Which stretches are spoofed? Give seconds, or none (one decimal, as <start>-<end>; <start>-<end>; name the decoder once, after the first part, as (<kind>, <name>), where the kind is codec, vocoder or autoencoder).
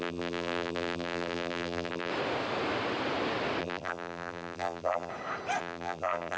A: 0.0-2.1 (vocoder, BigVGAN v2); 3.6-5.1; 5.6-6.4